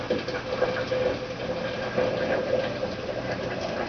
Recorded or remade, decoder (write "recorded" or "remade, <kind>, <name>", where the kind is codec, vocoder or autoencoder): recorded